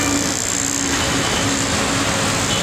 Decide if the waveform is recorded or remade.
recorded